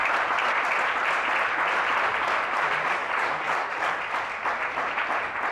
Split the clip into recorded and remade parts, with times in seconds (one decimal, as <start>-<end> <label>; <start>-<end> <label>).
0.0-3.0 recorded; 3.0-4.0 remade; 4.0-5.5 recorded